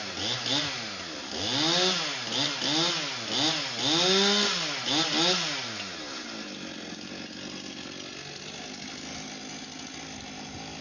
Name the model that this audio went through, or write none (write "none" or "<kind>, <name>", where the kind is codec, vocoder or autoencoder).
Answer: none